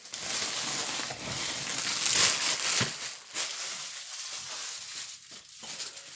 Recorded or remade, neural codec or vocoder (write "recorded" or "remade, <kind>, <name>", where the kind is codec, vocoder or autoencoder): recorded